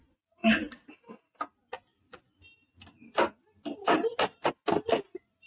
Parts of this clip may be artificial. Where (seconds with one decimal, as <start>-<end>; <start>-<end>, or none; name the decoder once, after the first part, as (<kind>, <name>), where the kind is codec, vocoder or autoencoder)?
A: none